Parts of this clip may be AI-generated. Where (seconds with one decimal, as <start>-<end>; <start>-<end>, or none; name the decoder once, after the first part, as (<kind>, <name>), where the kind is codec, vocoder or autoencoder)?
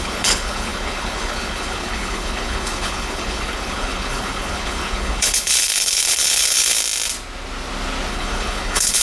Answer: 0.0-6.8 (codec, HILCodec); 8.1-9.0